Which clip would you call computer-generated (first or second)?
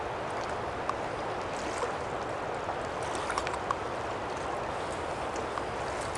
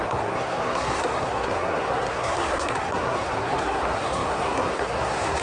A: second